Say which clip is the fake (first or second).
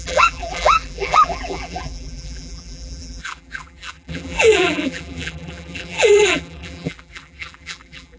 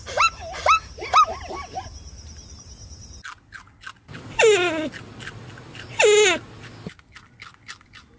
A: first